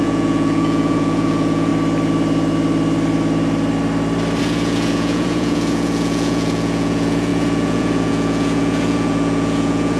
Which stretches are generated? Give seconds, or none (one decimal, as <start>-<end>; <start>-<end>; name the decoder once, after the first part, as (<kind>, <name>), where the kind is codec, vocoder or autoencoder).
0.0-1.7 (vocoder, Vocos); 4.4-10.0